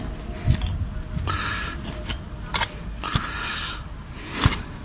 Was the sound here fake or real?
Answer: real